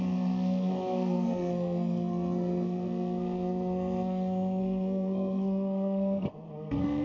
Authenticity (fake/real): fake